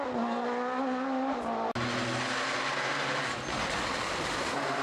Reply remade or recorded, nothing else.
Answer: recorded